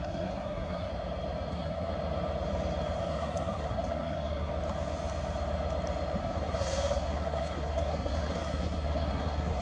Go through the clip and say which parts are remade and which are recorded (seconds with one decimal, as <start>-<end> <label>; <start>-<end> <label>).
0.0-0.9 remade; 0.9-1.5 recorded; 1.5-1.9 remade; 1.9-3.0 recorded; 3.0-4.5 remade; 4.5-6.2 recorded; 6.2-9.6 remade